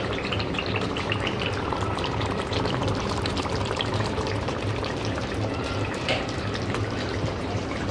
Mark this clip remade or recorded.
remade